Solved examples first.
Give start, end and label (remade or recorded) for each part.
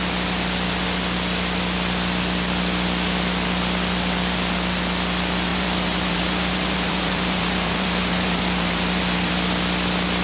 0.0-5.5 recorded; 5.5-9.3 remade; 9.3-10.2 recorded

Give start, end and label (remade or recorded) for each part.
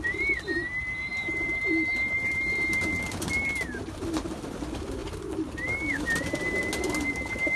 0.0-7.6 recorded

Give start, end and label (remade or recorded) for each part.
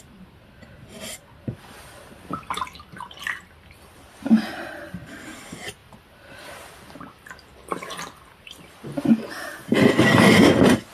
0.0-10.9 recorded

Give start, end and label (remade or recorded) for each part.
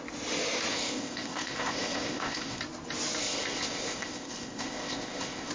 0.0-0.7 recorded; 0.7-2.6 remade; 2.6-3.2 recorded; 3.2-5.5 remade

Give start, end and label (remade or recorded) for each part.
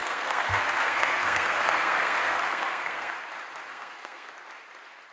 0.0-3.1 remade; 3.1-3.7 recorded; 3.7-4.3 remade; 4.3-5.1 recorded